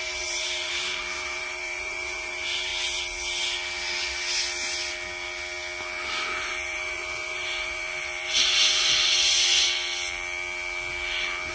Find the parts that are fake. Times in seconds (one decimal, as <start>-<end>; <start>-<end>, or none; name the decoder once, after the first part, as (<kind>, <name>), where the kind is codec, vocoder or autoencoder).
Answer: 0.0-2.7 (vocoder, BigVGAN v2); 6.4-8.5